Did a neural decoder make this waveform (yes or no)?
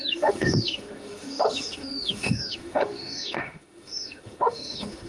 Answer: yes